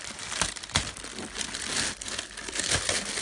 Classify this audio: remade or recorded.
remade